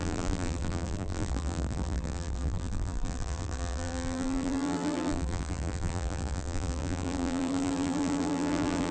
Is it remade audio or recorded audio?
remade